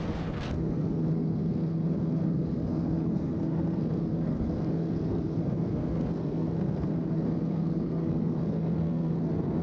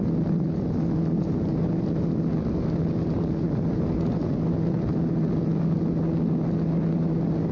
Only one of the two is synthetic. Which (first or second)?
first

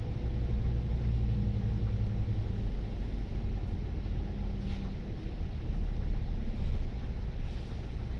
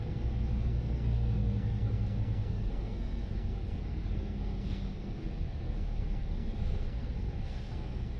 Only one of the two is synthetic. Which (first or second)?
second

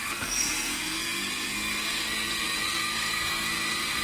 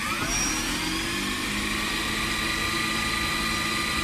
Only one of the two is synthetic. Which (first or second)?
first